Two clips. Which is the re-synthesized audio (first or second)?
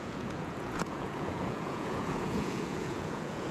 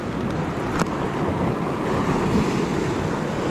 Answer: first